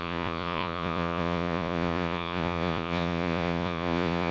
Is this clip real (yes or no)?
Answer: no